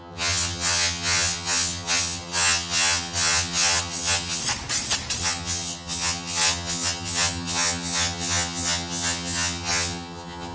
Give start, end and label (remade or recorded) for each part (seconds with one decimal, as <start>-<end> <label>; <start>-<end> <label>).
0.0-4.4 remade; 4.4-5.2 recorded; 5.2-10.5 remade